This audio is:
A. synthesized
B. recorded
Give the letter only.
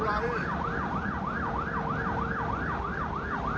B